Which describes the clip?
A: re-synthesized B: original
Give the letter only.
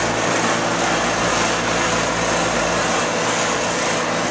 B